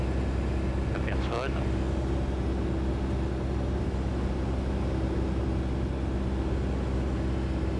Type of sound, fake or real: real